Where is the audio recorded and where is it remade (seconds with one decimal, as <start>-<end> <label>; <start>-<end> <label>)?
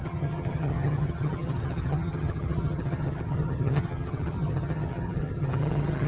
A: 0.0-6.1 remade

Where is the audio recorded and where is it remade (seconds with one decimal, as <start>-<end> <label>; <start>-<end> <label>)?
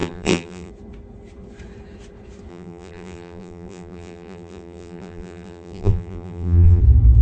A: 0.0-0.7 remade; 0.7-2.5 recorded; 2.5-6.8 remade; 6.8-7.2 recorded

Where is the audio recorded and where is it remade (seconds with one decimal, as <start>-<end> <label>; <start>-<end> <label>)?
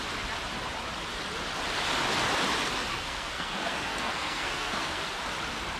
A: 0.0-2.9 recorded; 2.9-5.2 remade; 5.2-5.8 recorded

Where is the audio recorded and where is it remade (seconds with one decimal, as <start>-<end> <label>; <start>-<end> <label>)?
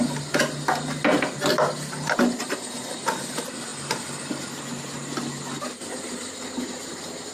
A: 0.0-7.3 recorded